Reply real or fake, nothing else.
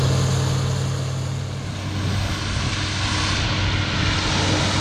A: real